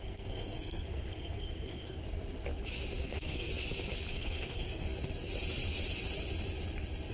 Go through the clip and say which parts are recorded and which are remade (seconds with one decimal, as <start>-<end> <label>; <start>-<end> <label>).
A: 0.0-2.0 remade; 2.0-3.0 recorded; 3.0-3.5 remade; 3.5-4.1 recorded; 4.1-4.9 remade; 4.9-7.1 recorded